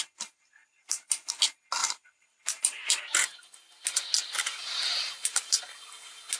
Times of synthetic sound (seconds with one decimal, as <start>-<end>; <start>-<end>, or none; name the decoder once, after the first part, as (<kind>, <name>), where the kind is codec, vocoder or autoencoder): 0.6-1.3 (vocoder, BigVGAN v2); 1.8-3.0; 4.9-5.6

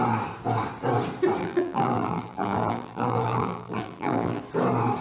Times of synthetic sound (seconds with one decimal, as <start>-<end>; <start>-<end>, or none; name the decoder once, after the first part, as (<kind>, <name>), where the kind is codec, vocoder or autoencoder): 1.4-4.4 (vocoder, BigVGAN v2)

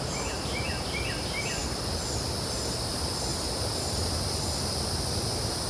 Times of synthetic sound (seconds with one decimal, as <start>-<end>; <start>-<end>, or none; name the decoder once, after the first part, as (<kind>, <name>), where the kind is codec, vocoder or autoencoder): 3.3-4.2 (vocoder, BigVGAN v2)

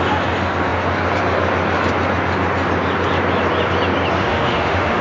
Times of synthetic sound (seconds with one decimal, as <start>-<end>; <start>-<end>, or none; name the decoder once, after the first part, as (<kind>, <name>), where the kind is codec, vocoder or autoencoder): 4.2-5.0 (autoencoder, DAC-VAE)

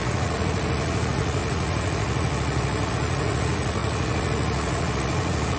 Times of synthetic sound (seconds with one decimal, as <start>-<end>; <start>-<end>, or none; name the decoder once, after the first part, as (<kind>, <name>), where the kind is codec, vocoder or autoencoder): 0.0-5.6 (vocoder, Vocos)

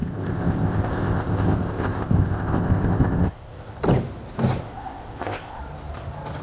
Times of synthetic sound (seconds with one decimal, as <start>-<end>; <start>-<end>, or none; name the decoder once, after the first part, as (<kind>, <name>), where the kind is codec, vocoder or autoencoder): 0.0-3.8 (codec, ZipCodec); 4.6-5.6

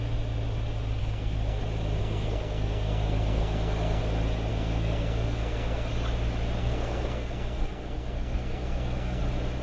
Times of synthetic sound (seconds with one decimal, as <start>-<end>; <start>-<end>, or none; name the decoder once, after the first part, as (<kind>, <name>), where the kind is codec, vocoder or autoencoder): 1.0-1.6 (codec, SNAC); 2.0-4.0; 4.5-5.9; 6.6-9.2

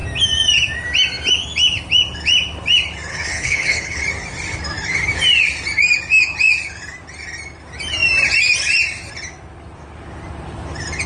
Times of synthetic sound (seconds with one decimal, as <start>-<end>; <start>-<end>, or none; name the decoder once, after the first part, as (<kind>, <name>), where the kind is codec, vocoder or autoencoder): 3.1-4.0 (codec, HILCodec)